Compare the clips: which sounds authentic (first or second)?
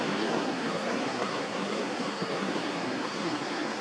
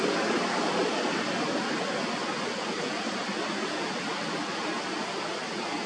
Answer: second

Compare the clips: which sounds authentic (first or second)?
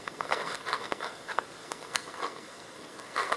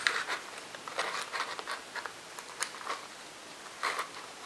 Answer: second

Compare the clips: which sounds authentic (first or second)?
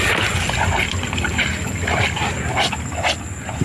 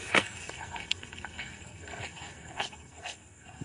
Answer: first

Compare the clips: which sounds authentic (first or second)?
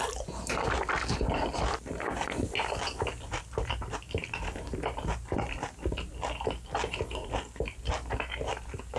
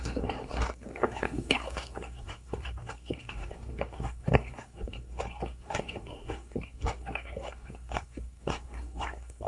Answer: first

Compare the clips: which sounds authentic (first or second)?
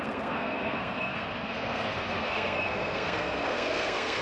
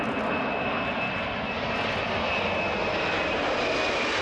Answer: second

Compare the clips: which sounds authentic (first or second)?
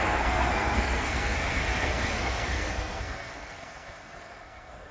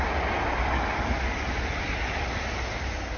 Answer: second